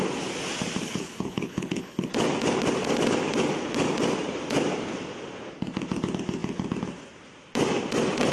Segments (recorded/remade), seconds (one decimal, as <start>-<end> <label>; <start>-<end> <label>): 0.0-0.8 recorded; 0.8-2.1 remade; 2.1-8.3 recorded

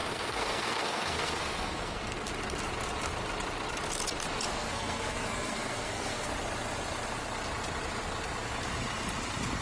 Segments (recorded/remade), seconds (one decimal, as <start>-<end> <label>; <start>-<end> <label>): 0.0-2.3 remade; 2.3-4.5 recorded; 4.5-6.3 remade; 6.3-9.6 recorded

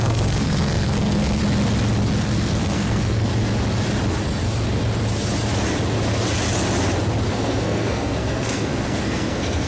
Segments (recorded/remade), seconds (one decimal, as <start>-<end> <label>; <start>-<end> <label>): 0.0-1.4 remade; 1.4-2.2 recorded; 2.2-3.3 remade; 3.3-7.3 recorded; 7.3-9.7 remade